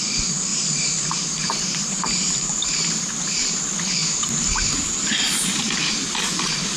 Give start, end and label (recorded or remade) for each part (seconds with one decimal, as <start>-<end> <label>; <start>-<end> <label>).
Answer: 0.0-0.5 recorded; 0.5-3.6 remade; 3.6-4.0 recorded; 4.0-6.8 remade